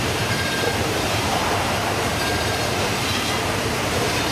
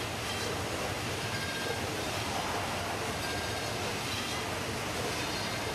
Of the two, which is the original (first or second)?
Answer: second